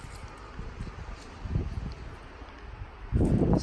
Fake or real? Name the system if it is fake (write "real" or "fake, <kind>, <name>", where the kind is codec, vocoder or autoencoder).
real